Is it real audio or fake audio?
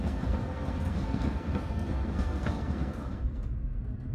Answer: fake